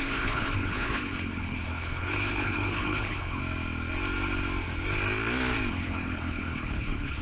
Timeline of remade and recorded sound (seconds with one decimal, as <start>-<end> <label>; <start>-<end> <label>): 0.0-3.4 remade; 3.4-5.7 recorded; 5.7-7.2 remade

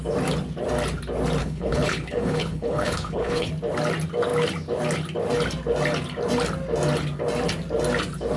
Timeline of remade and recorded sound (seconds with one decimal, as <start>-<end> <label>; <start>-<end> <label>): 0.0-1.4 recorded; 1.4-3.5 remade; 3.5-8.4 recorded